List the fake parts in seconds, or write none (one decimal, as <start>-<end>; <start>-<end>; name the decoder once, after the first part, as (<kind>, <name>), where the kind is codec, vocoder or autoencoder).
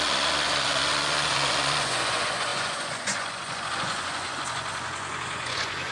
0.0-5.9 (vocoder, Vocos)